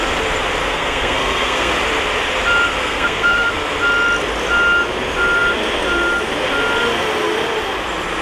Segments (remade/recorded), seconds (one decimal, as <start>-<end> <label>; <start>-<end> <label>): 0.0-0.6 recorded; 0.6-1.7 remade; 1.7-2.8 recorded; 2.8-3.5 remade; 3.5-8.2 recorded

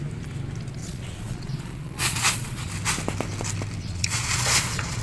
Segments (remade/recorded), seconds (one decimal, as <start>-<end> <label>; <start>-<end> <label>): 0.0-0.8 recorded; 0.8-2.7 remade; 2.7-3.8 recorded; 3.8-5.0 remade

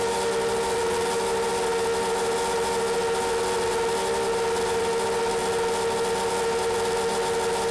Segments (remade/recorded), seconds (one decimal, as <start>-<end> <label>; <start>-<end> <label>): 0.0-7.7 recorded

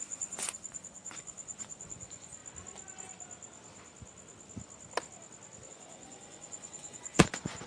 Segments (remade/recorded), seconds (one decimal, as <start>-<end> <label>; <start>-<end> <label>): 0.0-2.4 remade; 2.4-5.7 recorded; 5.7-7.7 remade

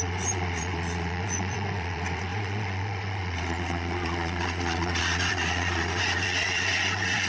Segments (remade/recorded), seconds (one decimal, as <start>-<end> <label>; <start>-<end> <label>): 0.0-7.3 remade

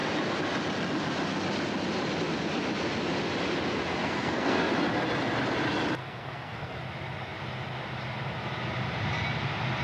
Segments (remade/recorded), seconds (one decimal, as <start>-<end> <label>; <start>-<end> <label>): 0.0-4.0 recorded; 4.0-4.7 remade; 4.7-6.0 recorded; 6.0-6.8 remade; 6.8-9.8 recorded

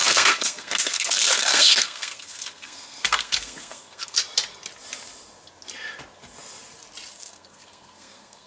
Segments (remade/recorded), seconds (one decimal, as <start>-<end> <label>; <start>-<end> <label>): 0.0-4.2 remade; 4.2-7.1 recorded; 7.1-8.5 remade

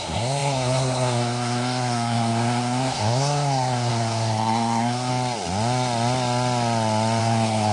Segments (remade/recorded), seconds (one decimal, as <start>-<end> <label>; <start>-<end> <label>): 0.0-5.1 remade; 5.1-7.2 recorded; 7.2-7.7 remade